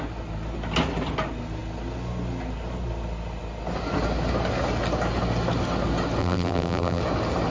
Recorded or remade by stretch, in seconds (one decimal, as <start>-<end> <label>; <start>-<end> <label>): 0.0-6.2 recorded; 6.2-7.0 remade; 7.0-7.5 recorded